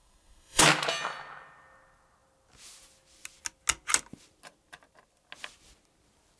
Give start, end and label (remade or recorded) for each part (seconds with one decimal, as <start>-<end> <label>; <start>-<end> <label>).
0.0-0.6 remade; 0.6-6.4 recorded